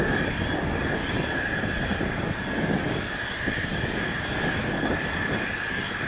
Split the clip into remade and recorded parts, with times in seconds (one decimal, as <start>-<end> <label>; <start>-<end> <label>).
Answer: 0.0-1.9 recorded; 1.9-4.6 remade; 4.6-6.1 recorded